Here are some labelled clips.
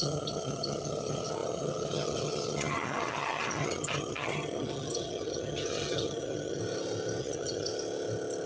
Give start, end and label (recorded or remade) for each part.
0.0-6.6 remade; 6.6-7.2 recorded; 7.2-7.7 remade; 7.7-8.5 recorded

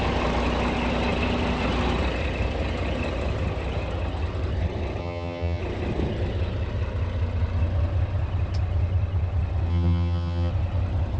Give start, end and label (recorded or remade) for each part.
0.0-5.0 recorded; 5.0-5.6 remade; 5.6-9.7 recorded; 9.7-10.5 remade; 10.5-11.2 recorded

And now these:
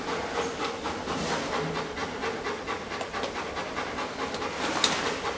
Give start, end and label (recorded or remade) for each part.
0.0-5.4 recorded

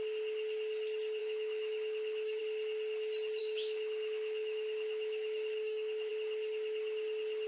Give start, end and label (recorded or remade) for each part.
0.0-1.2 recorded; 1.2-2.4 remade; 2.4-3.4 recorded; 3.4-6.1 remade; 6.1-7.5 recorded

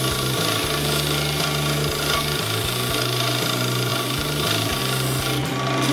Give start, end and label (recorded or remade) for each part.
0.0-5.9 recorded

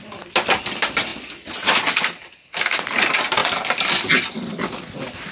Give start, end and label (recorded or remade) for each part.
0.0-5.3 recorded

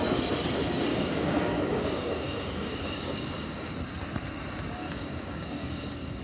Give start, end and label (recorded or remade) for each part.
0.0-0.9 recorded; 0.9-3.7 remade; 3.7-4.8 recorded; 4.8-6.2 remade